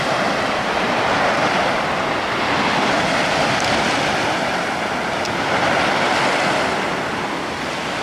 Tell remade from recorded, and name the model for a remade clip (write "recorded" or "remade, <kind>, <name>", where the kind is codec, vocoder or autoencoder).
recorded